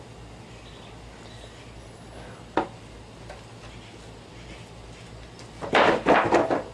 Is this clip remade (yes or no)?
no